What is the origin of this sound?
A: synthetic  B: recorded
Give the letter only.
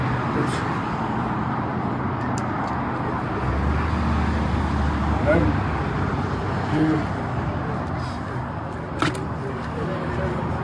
B